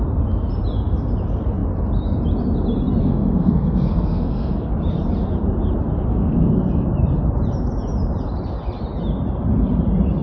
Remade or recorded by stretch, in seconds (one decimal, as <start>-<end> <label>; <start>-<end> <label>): 0.0-3.0 recorded; 3.0-4.7 remade; 4.7-6.1 recorded; 6.1-6.6 remade; 6.6-10.2 recorded